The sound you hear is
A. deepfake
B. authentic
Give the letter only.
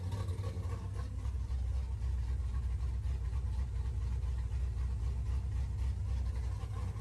B